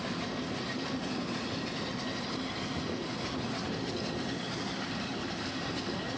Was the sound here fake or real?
real